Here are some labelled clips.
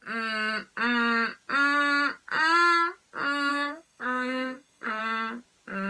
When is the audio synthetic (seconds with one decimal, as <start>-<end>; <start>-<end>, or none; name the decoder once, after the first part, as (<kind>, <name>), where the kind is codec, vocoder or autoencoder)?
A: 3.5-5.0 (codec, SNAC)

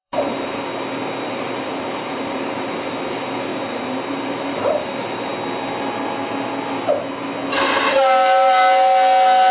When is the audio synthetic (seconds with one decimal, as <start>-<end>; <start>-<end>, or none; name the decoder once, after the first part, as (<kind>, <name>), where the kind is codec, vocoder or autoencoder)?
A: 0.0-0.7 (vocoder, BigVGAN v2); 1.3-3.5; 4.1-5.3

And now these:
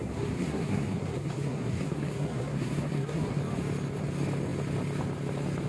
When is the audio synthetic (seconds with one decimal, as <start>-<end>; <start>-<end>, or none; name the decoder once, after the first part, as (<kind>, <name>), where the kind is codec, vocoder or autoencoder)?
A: 0.0-3.4 (codec, SNAC)